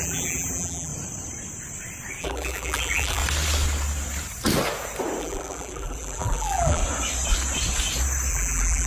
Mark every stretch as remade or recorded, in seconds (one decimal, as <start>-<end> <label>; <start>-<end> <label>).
0.0-0.9 remade; 0.9-2.2 recorded; 2.2-3.2 remade; 3.2-5.2 recorded; 5.2-6.8 remade; 6.8-8.3 recorded; 8.3-8.9 remade